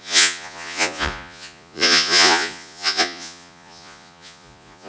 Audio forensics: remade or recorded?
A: remade